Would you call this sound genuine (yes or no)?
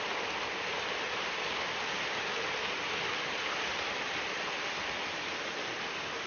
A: yes